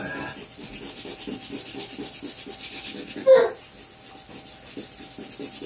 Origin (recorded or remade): recorded